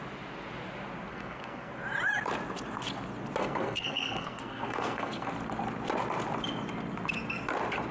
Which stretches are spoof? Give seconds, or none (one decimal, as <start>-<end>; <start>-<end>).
1.1-1.7; 3.4-5.3